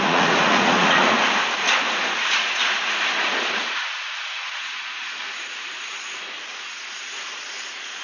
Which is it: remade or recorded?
remade